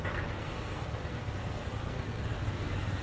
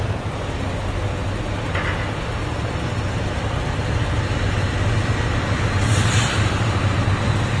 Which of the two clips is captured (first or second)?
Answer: second